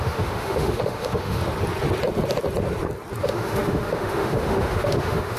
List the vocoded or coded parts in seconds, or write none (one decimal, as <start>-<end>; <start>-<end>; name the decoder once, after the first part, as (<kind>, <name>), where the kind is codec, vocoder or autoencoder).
0.0-1.4 (autoencoder, DAC-VAE); 3.2-5.4